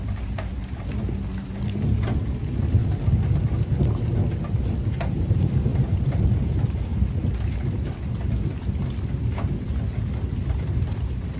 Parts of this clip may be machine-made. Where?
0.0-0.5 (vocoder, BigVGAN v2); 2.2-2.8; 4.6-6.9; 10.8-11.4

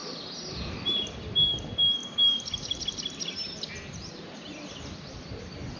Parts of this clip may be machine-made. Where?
0.0-0.8 (vocoder, BigVGAN v2); 2.0-5.8

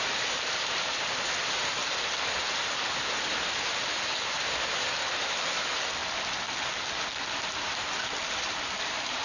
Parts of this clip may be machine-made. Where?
0.0-1.8 (vocoder, BigVGAN v2); 3.6-6.0; 7.5-9.2

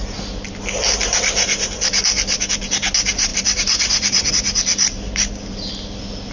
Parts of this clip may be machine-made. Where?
3.3-4.3 (vocoder, BigVGAN v2); 4.7-5.7

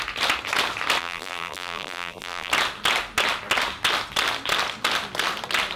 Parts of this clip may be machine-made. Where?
1.0-2.5 (vocoder, BigVGAN v2)